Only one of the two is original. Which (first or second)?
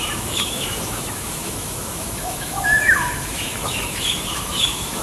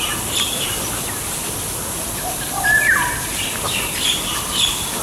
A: second